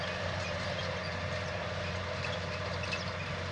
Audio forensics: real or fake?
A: real